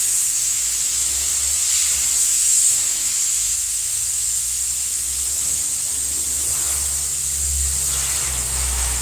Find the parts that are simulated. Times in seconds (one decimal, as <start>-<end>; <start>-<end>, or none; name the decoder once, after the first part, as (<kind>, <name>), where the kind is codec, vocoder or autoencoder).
0.0-1.3 (autoencoder, DAC-VAE); 2.2-5.6; 8.2-9.0